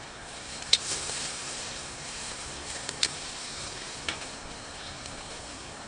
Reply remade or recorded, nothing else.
remade